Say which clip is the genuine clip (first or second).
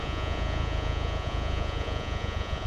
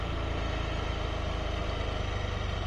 second